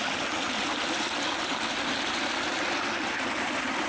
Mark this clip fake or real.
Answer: real